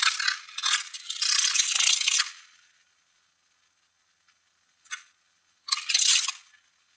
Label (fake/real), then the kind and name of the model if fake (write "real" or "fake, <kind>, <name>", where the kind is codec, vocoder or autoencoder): fake, vocoder, Vocos